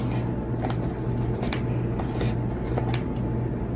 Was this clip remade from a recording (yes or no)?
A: no